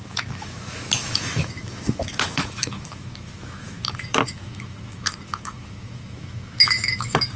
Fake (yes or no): yes